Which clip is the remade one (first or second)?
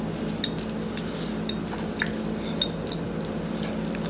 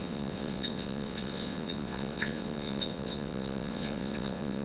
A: second